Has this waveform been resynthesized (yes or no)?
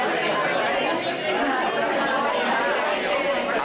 no